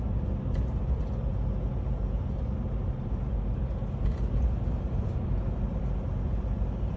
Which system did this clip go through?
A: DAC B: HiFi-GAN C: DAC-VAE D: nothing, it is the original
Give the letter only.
D